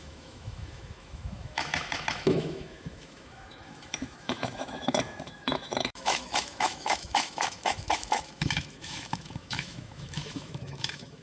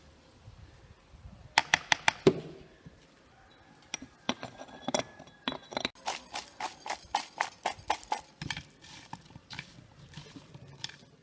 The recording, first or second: second